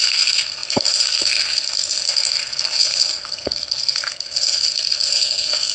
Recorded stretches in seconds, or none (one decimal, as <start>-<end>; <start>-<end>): none